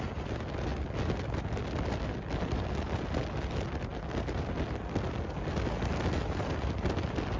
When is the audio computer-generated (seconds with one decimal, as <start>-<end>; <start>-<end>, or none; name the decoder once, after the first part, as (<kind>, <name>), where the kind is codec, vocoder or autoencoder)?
none